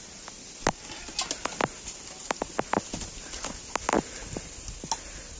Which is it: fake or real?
real